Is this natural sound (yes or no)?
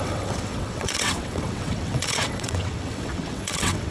no